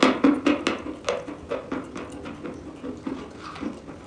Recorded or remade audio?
recorded